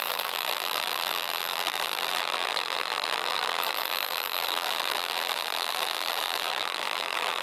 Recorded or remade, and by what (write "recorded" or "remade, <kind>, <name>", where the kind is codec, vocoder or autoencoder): remade, vocoder, BigVGAN v2